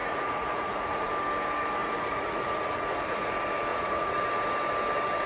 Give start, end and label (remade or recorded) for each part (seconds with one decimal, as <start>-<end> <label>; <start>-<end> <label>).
0.0-1.1 remade; 1.1-1.8 recorded; 1.8-3.3 remade; 3.3-3.7 recorded; 3.7-4.2 remade; 4.2-5.3 recorded